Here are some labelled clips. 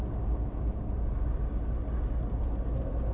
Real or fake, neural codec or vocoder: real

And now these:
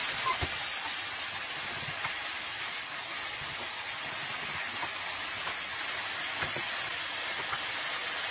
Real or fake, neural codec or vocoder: real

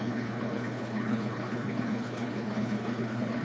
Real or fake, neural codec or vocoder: fake, codec, HILCodec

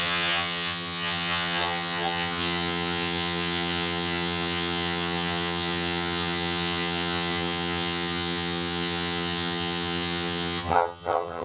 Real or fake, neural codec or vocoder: fake, vocoder, HiFi-GAN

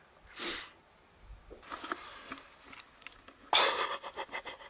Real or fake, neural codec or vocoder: real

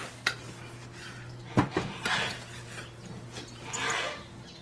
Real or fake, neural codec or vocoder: real